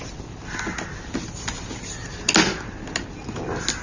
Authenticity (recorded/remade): recorded